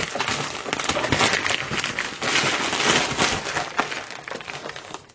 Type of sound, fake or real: real